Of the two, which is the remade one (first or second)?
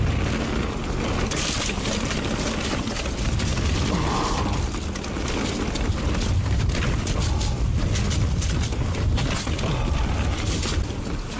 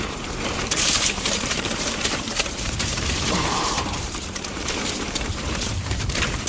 second